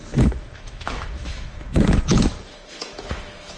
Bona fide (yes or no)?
no